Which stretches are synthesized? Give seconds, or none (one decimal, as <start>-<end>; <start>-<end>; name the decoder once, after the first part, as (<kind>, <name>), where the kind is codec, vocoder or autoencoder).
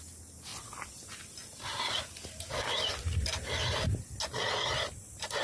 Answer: none